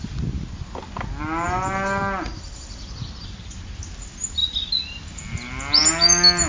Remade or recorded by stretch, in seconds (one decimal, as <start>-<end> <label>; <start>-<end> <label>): 0.0-6.5 recorded